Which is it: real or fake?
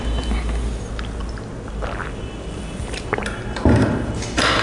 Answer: real